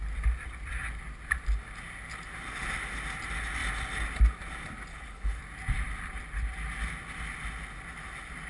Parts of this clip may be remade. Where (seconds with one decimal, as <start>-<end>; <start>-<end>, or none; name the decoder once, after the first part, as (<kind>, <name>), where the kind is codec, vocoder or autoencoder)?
4.9-5.4 (codec, HILCodec)